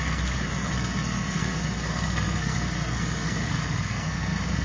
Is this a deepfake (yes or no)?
yes